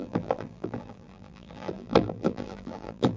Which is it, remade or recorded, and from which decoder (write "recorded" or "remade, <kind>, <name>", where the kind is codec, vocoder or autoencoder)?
remade, vocoder, BigVGAN v2